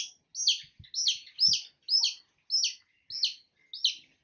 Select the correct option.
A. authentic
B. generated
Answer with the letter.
A